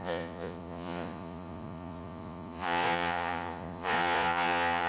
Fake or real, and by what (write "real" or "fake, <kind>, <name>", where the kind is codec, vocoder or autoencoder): fake, vocoder, Vocos